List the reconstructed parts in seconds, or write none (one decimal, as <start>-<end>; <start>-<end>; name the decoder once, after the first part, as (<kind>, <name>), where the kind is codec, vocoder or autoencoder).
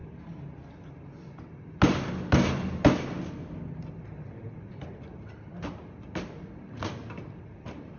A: none